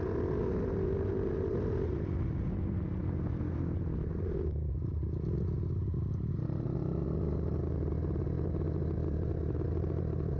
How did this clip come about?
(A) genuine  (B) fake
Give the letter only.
A